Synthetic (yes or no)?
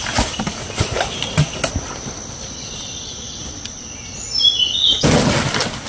no